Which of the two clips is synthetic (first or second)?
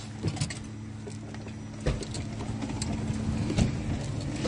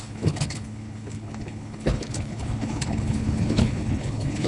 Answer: second